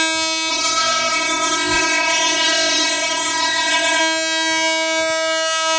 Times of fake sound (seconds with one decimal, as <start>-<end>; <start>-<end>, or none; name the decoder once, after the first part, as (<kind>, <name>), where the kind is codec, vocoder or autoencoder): 0.5-4.0 (codec, ZipCodec)